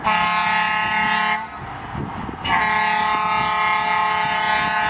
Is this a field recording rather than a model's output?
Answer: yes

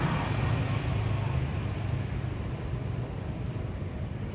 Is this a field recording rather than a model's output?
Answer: yes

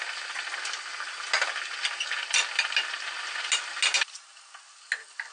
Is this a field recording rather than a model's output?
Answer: yes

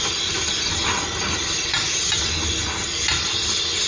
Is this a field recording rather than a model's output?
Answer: yes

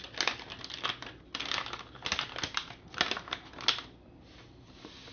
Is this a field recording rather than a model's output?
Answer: yes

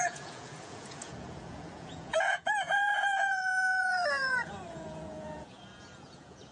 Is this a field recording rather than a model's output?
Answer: no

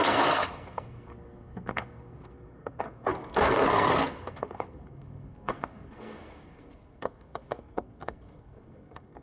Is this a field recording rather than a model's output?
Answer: no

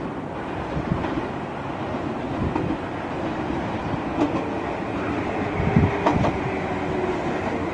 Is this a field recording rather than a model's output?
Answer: yes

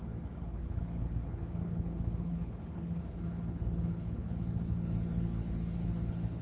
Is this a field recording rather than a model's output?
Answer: no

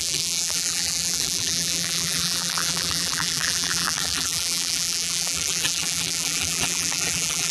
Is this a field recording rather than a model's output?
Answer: no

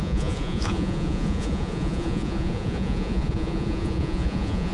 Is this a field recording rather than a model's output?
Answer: no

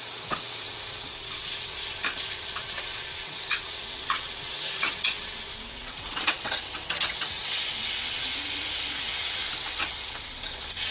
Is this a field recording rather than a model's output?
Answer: no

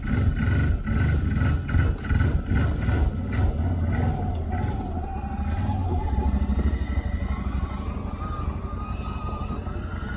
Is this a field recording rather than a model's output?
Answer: yes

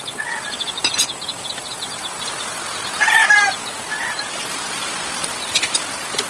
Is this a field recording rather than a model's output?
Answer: yes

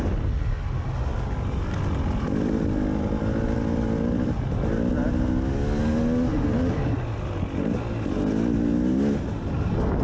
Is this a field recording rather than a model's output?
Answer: yes